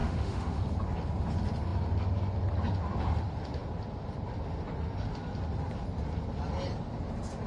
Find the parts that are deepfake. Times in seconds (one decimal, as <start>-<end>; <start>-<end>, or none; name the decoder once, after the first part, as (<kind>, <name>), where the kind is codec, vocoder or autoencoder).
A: 0.0-0.6 (autoencoder, DAC-VAE)